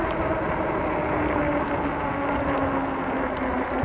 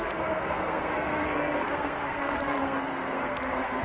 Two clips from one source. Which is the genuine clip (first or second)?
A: first